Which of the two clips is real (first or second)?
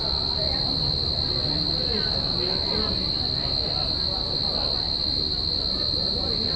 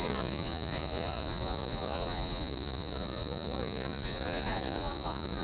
first